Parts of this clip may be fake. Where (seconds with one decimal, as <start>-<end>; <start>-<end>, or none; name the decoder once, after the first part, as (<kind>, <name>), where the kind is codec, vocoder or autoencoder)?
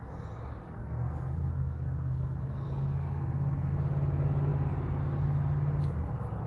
0.6-3.7 (codec, SNAC)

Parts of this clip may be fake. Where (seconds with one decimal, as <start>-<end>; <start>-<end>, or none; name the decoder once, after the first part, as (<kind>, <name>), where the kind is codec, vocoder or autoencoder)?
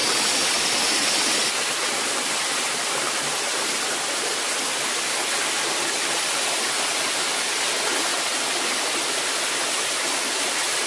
none